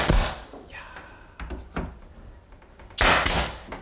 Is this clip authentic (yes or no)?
yes